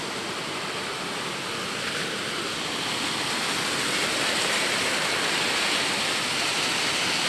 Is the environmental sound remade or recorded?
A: recorded